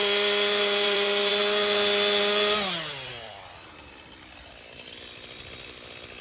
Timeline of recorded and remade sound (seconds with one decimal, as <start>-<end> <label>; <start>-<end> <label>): 0.0-1.3 remade; 1.3-3.1 recorded; 3.1-4.5 remade; 4.5-6.2 recorded